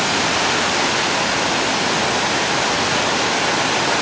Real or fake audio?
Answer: real